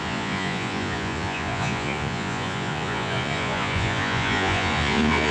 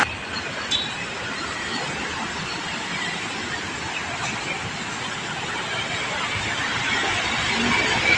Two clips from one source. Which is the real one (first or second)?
second